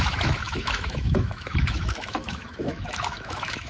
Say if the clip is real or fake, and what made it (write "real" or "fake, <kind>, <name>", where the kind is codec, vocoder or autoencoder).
fake, autoencoder, DAC-VAE